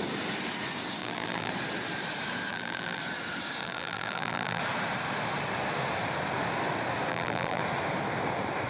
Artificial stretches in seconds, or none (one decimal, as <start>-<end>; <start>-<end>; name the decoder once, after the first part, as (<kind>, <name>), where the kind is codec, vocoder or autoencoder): 1.0-1.5 (vocoder, BigVGAN v2); 2.5-3.0; 3.6-4.6; 7.1-7.6